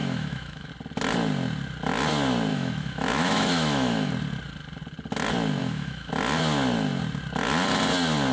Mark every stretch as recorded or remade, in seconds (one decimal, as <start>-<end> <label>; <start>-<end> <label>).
0.0-0.7 remade; 0.7-2.5 recorded; 2.5-4.1 remade; 4.1-5.6 recorded; 5.6-6.1 remade; 6.1-8.3 recorded